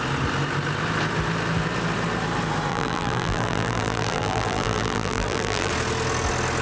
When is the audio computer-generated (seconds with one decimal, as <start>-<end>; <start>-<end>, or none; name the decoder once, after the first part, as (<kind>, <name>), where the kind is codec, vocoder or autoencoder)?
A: 2.7-5.7 (vocoder, BigVGAN v2)